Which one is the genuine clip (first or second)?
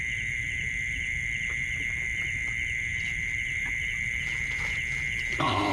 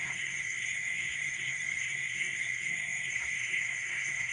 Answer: first